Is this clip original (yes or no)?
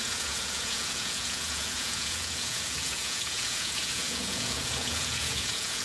no